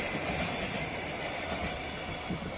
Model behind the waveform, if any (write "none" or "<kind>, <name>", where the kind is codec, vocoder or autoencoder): none